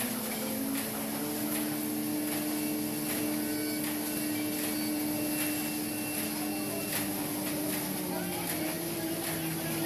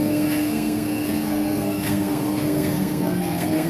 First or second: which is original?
first